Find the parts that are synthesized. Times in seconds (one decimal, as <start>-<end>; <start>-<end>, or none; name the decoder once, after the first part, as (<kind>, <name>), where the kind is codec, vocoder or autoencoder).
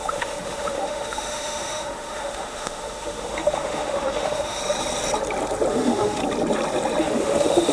0.0-4.6 (autoencoder, DAC-VAE); 5.7-6.2; 7.0-7.7